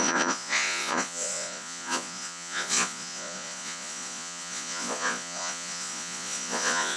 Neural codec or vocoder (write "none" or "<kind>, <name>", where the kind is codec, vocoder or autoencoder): vocoder, Vocos